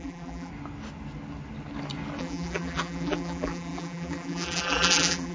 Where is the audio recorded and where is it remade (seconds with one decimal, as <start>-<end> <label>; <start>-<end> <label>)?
0.0-0.5 remade; 0.5-2.2 recorded; 2.2-5.3 remade